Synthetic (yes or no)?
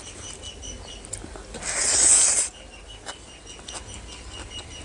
no